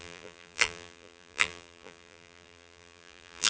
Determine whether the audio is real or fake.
fake